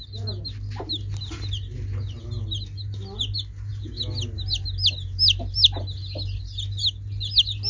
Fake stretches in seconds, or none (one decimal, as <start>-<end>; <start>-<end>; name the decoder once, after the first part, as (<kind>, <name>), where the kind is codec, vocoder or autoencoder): none